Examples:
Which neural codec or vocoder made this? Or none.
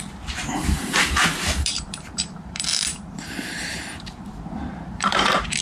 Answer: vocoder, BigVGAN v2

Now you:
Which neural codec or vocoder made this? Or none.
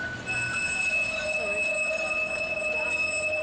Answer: none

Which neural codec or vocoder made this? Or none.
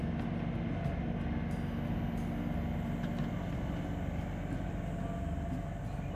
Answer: none